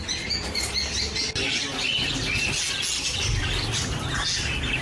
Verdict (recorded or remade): recorded